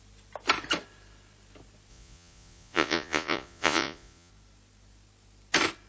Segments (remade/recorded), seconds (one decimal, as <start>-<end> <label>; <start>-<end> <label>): 0.0-1.9 recorded; 1.9-4.3 remade; 4.3-5.9 recorded